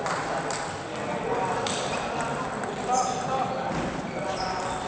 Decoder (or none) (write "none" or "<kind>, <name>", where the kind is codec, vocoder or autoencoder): none